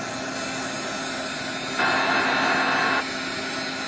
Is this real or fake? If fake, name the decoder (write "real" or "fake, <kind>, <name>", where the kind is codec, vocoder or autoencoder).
real